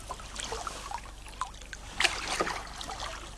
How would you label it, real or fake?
real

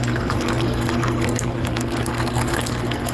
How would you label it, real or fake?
fake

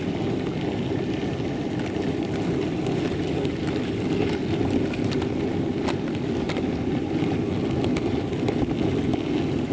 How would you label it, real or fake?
real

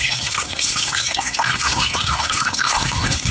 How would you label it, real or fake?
fake